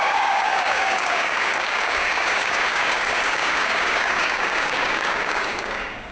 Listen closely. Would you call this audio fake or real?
fake